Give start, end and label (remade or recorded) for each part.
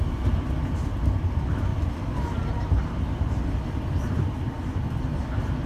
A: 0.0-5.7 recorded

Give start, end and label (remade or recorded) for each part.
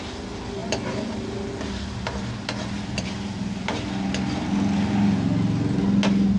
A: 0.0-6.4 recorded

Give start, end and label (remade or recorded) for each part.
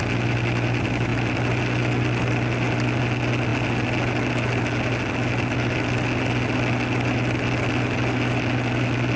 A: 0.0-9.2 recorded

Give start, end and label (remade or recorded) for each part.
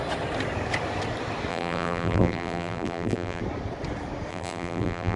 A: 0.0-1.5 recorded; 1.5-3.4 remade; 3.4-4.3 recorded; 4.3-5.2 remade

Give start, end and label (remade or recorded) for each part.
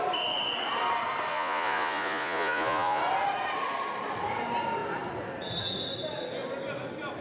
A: 0.0-1.3 recorded; 1.3-3.0 remade; 3.0-7.2 recorded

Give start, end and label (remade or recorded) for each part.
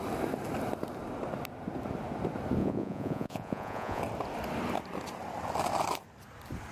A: 0.0-2.6 recorded; 2.6-4.0 remade; 4.0-6.7 recorded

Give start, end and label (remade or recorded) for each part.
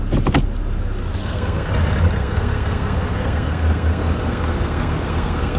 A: 0.0-1.2 recorded; 1.2-1.7 remade; 1.7-2.2 recorded; 2.2-5.6 remade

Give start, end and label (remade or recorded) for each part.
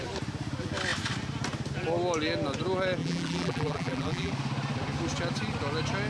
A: 0.0-3.0 recorded; 3.0-4.3 remade; 4.3-6.1 recorded